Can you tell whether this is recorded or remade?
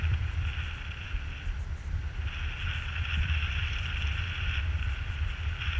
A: recorded